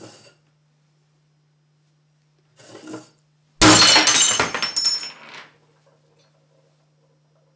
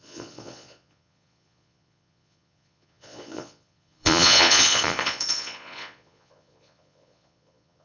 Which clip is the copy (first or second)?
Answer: second